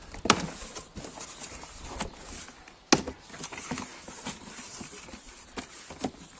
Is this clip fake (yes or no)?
no